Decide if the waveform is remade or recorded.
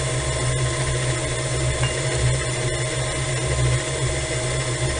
recorded